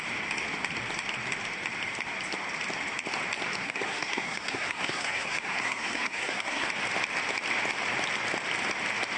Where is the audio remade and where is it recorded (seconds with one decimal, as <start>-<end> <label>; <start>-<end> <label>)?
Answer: 0.0-3.6 recorded; 3.6-6.7 remade; 6.7-9.2 recorded